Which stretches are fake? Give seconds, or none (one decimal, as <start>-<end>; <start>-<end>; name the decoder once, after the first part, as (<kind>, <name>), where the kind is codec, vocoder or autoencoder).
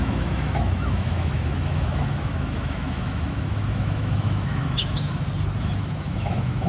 0.0-5.1 (autoencoder, DAC-VAE); 5.6-6.7